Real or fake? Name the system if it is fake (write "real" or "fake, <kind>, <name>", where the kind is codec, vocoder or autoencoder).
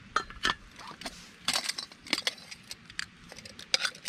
real